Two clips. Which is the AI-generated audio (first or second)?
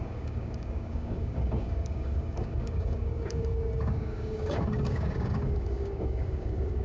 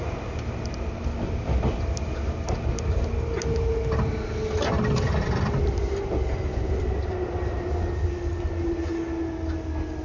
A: first